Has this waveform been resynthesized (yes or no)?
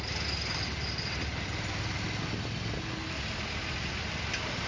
no